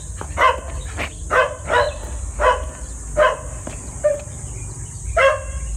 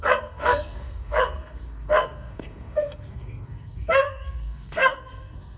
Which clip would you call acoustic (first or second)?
first